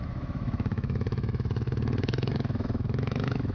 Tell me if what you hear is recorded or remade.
remade